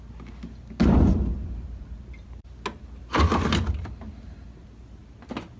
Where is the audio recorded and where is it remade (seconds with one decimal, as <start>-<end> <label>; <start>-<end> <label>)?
0.0-5.6 recorded